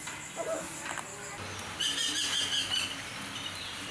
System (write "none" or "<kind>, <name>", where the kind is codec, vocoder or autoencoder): none